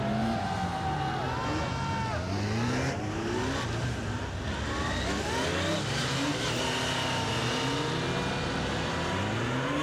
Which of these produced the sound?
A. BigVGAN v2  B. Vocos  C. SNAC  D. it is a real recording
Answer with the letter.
D